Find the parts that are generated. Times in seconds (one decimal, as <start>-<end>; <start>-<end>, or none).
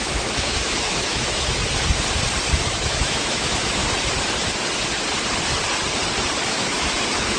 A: 0.0-1.6; 2.6-3.8; 6.5-7.4